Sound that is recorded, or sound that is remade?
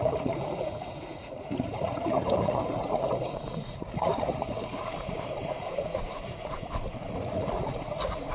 remade